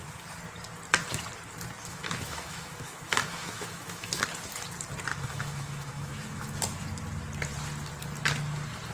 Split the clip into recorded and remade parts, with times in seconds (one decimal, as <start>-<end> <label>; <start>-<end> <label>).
0.0-1.8 recorded; 1.8-4.2 remade; 4.2-5.1 recorded; 5.1-6.6 remade; 6.6-8.9 recorded